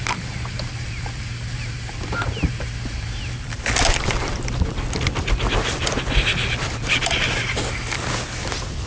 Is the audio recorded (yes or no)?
yes